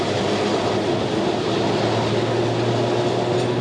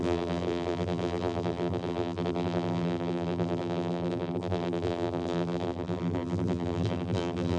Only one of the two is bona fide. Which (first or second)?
first